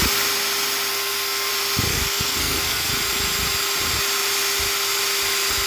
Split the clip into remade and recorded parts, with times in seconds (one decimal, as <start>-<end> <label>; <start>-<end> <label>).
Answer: 0.0-0.9 recorded; 0.9-1.5 remade; 1.5-1.9 recorded; 1.9-2.9 remade; 2.9-5.7 recorded